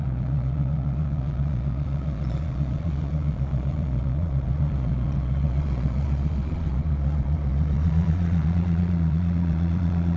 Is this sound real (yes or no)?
no